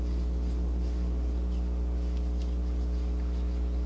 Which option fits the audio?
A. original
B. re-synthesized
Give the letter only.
A